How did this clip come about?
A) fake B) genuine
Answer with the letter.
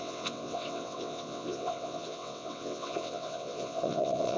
A